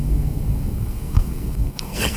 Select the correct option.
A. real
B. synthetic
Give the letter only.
B